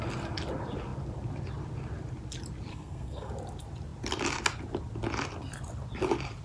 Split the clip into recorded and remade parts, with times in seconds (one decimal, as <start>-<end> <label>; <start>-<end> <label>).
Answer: 0.0-2.7 recorded; 2.7-3.3 remade; 3.3-6.4 recorded